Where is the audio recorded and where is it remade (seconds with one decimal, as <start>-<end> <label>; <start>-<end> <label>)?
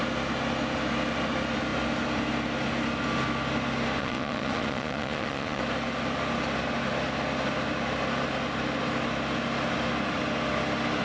0.0-4.0 recorded; 4.0-5.6 remade; 5.6-11.0 recorded